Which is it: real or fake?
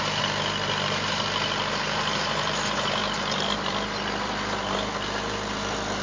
real